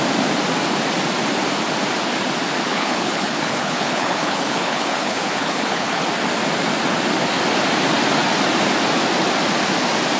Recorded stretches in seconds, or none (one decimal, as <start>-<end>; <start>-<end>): 0.0-2.7; 6.0-10.2